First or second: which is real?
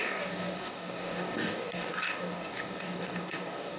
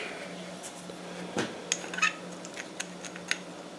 second